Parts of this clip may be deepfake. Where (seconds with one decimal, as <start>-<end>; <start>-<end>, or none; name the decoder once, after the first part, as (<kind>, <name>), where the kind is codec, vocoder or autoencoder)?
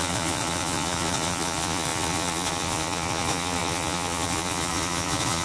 0.0-5.4 (vocoder, Vocos)